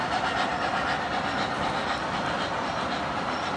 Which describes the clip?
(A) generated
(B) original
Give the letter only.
B